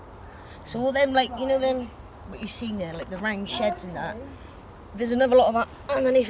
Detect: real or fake real